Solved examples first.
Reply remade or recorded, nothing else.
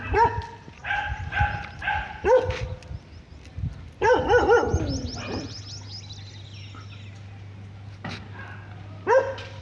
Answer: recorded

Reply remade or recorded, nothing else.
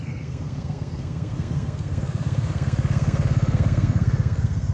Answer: remade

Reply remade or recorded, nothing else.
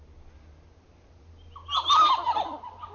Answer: recorded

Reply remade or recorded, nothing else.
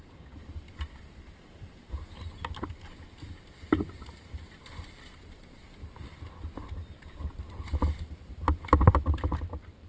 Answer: remade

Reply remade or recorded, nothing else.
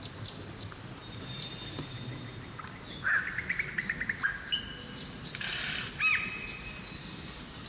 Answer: recorded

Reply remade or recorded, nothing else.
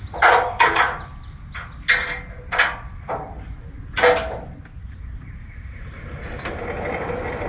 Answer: recorded